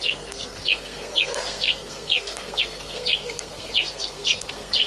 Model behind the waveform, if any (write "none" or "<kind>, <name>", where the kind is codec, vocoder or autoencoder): codec, SNAC